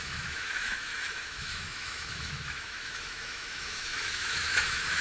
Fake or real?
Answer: fake